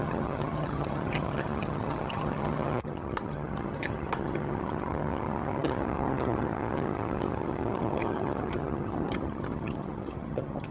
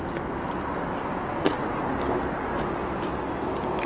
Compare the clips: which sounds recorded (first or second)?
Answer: second